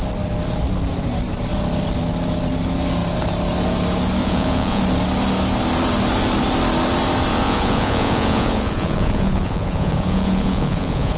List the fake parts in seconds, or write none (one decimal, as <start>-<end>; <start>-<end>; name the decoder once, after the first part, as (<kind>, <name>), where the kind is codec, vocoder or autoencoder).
4.2-4.8 (vocoder, Vocos); 7.3-11.2